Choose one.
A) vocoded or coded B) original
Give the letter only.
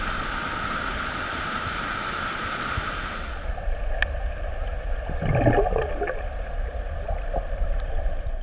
B